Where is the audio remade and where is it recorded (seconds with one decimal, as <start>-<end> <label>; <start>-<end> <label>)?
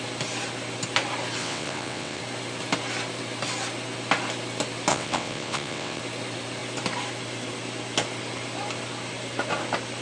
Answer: 0.0-1.4 recorded; 1.4-2.2 remade; 2.2-4.9 recorded; 4.9-6.0 remade; 6.0-10.0 recorded